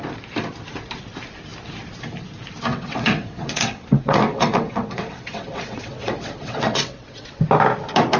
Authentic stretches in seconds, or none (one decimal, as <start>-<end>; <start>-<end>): 0.0-2.7; 7.4-8.2